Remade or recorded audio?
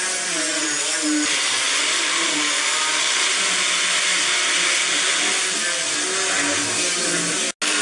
recorded